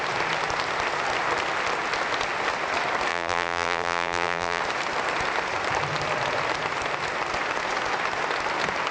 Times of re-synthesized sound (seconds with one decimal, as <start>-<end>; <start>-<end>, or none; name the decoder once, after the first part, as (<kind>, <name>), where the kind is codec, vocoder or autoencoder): 3.1-4.6 (vocoder, BigVGAN v2)

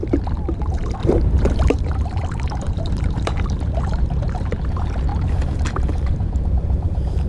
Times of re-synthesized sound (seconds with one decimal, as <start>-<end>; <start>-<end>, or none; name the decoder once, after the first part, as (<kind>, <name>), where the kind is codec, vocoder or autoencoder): 0.0-5.1 (vocoder, BigVGAN v2); 5.8-7.3